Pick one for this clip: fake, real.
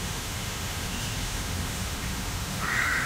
fake